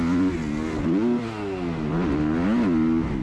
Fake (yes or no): no